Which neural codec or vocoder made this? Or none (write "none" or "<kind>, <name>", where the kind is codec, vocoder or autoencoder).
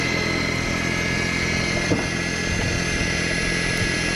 none